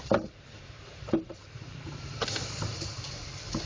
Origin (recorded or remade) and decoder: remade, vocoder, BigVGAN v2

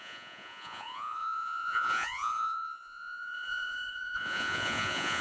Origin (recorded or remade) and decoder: remade, vocoder, Vocos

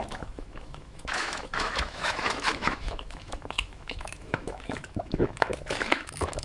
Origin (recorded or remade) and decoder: remade, autoencoder, DAC-VAE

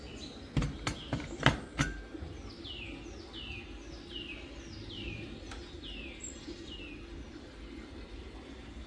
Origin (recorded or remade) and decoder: recorded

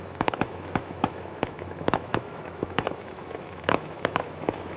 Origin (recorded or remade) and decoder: remade, autoencoder, DAC-VAE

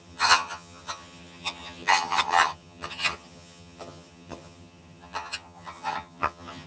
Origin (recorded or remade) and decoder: remade, vocoder, HiFi-GAN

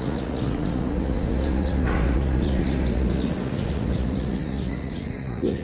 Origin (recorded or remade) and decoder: remade, vocoder, Vocos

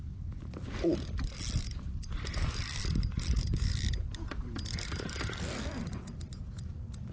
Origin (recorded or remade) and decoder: recorded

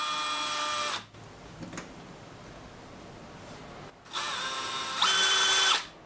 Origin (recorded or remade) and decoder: recorded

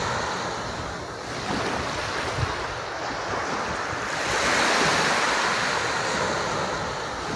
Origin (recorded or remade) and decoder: recorded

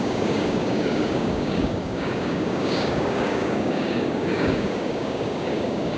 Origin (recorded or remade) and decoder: remade, codec, DAC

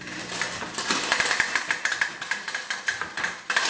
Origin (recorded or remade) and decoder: remade, vocoder, BigVGAN v2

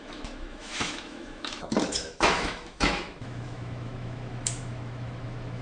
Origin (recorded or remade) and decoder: remade, autoencoder, DAC-VAE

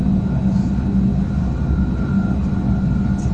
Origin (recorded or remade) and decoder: recorded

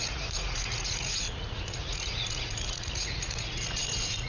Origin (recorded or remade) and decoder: remade, vocoder, Vocos